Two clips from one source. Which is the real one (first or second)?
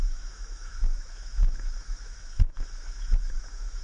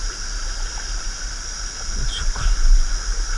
second